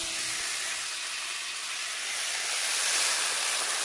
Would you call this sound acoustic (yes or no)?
yes